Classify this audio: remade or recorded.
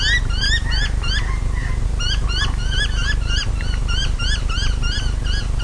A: recorded